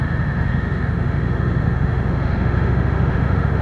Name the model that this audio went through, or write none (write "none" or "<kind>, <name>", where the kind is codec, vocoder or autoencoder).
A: autoencoder, DAC-VAE